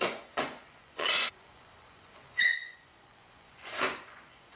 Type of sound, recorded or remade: remade